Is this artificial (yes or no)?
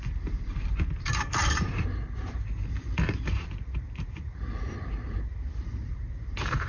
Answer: yes